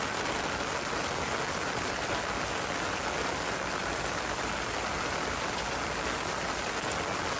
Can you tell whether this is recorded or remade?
recorded